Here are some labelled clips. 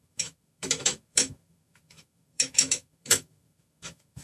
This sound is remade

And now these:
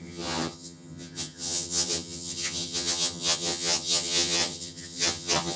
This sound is remade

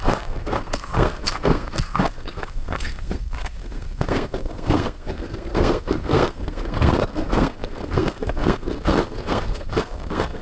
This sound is remade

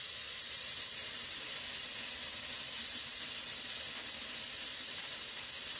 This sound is recorded